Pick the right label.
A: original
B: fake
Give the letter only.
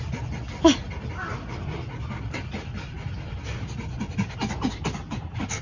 A